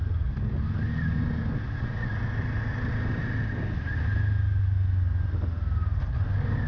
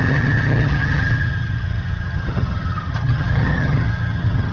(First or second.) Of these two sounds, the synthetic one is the second